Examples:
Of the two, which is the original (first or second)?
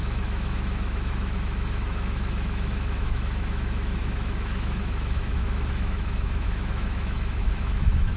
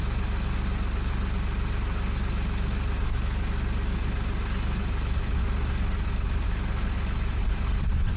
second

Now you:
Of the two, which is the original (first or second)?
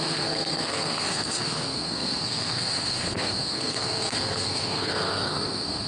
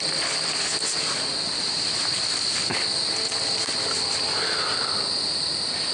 second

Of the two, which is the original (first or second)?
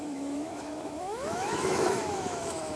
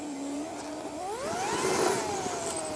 second